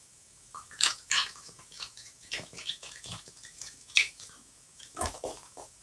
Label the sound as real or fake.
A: fake